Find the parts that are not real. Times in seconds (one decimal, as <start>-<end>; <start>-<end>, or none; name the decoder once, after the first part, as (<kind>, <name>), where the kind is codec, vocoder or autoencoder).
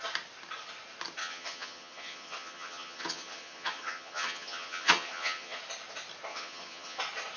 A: 1.2-5.6 (vocoder, HiFi-GAN); 6.3-7.0